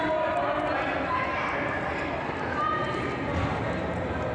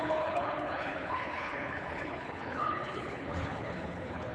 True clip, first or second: first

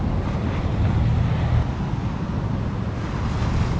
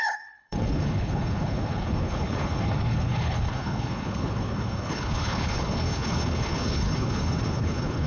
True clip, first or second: first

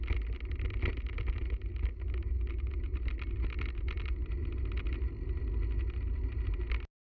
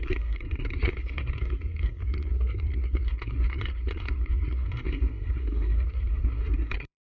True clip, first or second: first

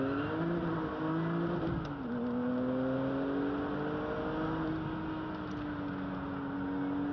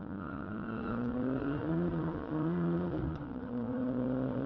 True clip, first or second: first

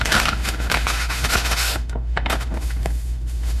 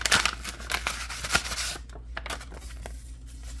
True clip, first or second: second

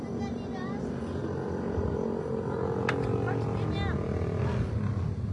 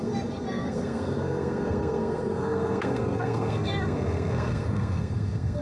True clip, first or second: first